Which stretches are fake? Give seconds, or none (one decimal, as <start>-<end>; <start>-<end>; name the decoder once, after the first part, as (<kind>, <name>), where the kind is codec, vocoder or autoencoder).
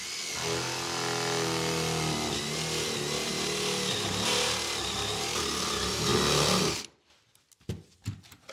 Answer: none